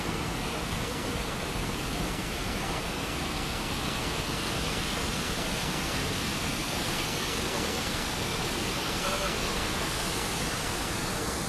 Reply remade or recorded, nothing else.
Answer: remade